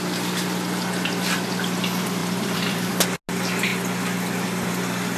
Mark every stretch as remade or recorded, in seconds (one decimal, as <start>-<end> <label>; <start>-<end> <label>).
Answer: 0.0-2.2 recorded; 2.2-2.9 remade; 2.9-5.2 recorded